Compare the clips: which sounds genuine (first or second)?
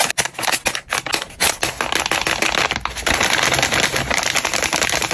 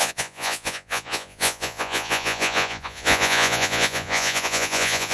first